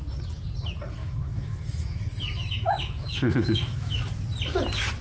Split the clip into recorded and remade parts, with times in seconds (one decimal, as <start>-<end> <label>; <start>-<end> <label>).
0.0-1.0 recorded; 1.0-4.0 remade; 4.0-5.0 recorded